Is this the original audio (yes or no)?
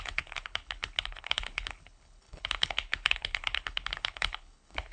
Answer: no